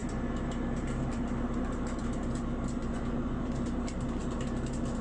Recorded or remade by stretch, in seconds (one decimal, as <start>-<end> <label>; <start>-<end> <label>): 0.0-2.8 recorded; 2.8-3.4 remade; 3.4-5.0 recorded